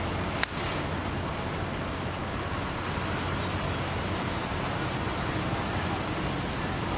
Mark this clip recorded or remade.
recorded